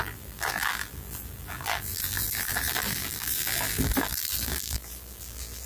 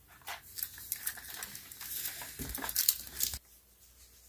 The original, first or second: second